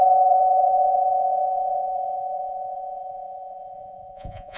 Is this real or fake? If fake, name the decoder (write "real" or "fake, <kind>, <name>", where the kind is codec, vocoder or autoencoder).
fake, vocoder, Vocos